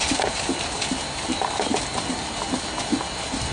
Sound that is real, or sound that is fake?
real